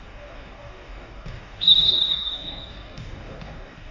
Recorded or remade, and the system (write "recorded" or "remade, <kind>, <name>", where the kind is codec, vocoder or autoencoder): remade, codec, DAC